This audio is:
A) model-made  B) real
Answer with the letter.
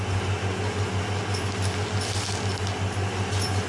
B